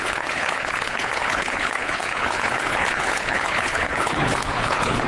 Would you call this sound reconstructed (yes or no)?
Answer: yes